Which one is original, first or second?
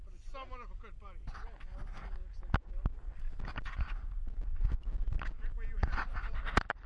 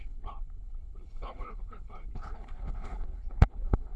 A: first